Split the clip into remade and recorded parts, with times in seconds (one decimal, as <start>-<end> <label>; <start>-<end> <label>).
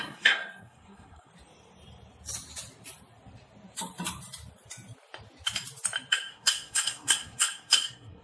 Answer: 0.0-1.3 remade; 1.3-6.1 recorded; 6.1-8.2 remade